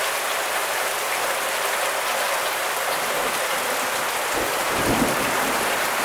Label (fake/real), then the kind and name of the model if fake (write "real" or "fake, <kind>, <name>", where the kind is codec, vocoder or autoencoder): real